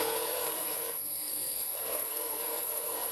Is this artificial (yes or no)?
yes